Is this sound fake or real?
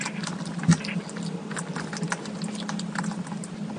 real